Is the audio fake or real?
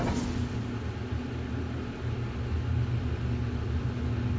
real